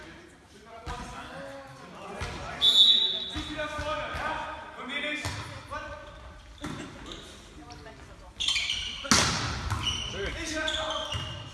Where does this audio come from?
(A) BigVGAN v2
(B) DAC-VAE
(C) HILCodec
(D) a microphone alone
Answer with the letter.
D